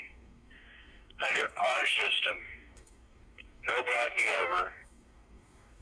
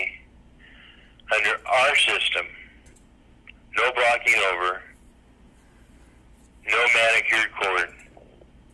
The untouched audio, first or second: second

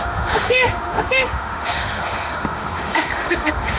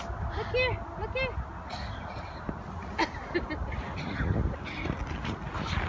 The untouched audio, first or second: second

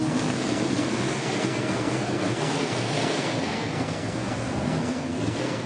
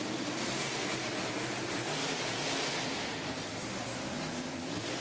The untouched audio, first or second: second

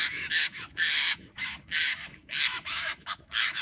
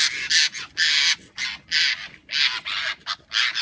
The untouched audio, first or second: second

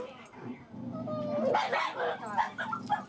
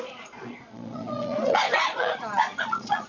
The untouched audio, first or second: first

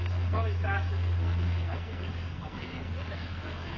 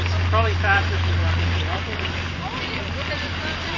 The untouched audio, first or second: second